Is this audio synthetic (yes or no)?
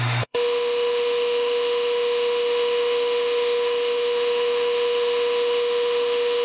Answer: yes